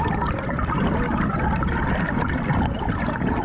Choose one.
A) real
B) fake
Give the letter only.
A